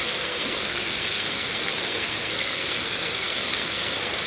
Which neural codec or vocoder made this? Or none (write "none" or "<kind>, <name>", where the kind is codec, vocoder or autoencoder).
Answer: codec, SNAC